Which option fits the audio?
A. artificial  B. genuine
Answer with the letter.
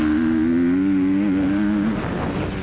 B